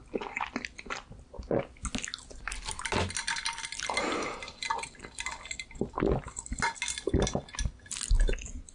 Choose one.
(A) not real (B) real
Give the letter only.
B